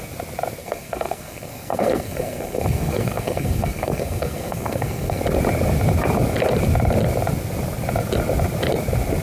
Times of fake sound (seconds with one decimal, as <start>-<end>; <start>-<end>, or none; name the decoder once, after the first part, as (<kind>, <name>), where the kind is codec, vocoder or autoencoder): 0.6-5.2 (codec, SNAC)